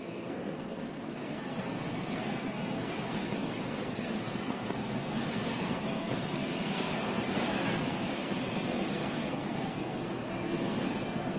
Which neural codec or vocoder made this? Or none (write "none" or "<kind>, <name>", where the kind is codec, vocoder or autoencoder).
codec, SNAC